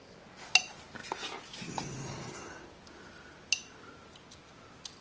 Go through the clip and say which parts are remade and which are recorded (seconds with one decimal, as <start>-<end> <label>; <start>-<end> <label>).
0.0-5.0 recorded